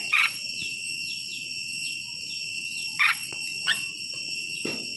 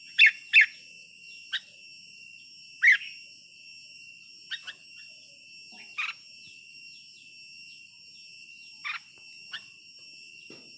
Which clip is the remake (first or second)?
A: first